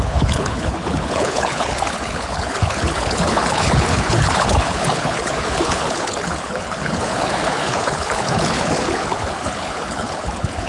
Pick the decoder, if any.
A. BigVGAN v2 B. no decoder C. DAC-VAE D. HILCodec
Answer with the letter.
D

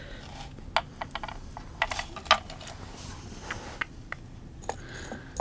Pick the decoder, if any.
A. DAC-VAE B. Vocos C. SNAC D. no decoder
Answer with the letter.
D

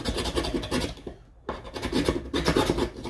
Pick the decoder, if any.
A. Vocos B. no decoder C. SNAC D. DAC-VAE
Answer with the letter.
B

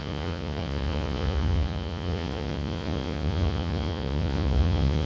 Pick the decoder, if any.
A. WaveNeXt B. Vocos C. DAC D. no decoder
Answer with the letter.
B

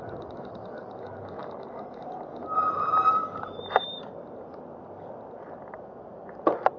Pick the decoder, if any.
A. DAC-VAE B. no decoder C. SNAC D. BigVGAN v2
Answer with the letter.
B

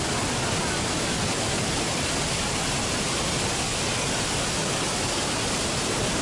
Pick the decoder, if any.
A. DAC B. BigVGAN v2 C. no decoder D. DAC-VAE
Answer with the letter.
C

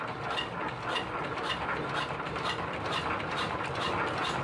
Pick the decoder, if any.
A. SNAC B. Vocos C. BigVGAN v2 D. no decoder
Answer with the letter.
D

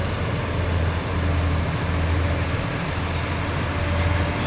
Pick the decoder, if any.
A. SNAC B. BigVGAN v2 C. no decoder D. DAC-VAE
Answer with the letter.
C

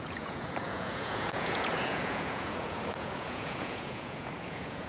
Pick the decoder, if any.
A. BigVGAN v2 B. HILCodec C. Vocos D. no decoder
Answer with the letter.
C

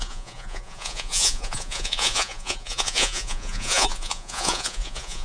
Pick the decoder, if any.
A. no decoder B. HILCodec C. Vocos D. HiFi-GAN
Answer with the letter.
C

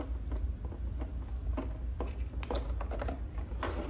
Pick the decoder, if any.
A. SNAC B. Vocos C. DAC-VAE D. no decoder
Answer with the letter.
D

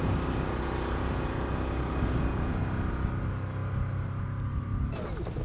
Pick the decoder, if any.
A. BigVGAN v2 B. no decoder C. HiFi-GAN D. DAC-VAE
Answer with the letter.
B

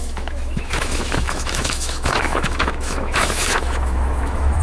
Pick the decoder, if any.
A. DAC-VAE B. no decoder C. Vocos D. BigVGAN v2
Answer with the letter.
A